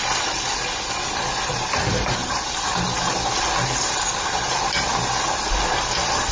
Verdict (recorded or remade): recorded